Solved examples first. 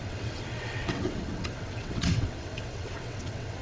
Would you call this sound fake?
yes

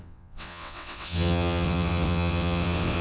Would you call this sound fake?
yes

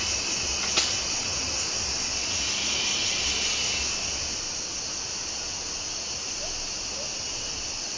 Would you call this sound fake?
no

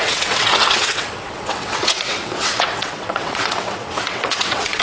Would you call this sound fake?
yes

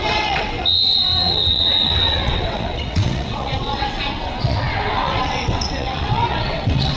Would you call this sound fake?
yes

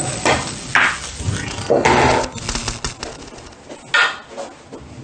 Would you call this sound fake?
no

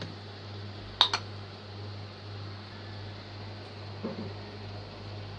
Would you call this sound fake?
no